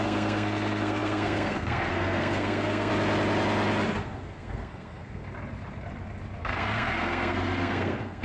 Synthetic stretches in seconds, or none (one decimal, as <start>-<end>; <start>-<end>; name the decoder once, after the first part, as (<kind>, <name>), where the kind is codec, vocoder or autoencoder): 0.0-2.9 (codec, SNAC); 4.0-5.2; 6.4-8.2